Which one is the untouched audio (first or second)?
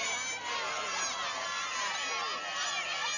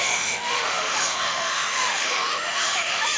first